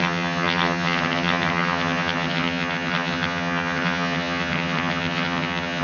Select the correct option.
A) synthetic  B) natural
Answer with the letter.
A